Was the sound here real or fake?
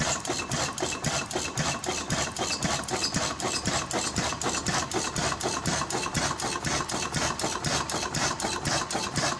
real